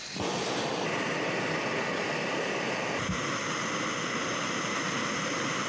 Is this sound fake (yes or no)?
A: no